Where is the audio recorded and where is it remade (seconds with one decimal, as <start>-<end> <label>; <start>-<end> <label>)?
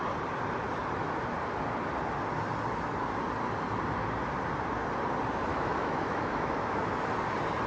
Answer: 0.0-5.5 recorded; 5.5-6.8 remade; 6.8-7.7 recorded